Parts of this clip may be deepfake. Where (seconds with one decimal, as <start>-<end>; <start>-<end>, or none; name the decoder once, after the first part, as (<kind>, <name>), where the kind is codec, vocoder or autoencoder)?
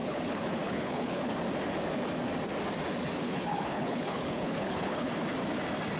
0.0-1.3 (codec, HILCodec); 3.2-5.1